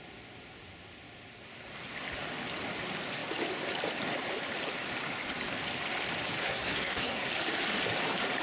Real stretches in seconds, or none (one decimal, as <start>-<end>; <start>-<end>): 0.0-6.4; 7.3-8.4